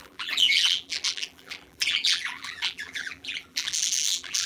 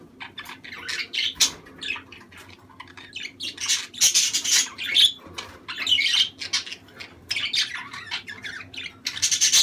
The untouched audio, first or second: second